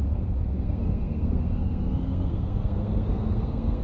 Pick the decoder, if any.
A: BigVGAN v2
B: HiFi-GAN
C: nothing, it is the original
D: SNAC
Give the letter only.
D